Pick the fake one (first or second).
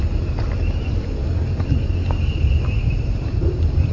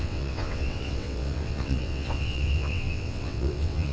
second